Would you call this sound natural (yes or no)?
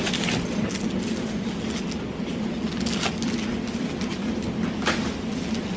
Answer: yes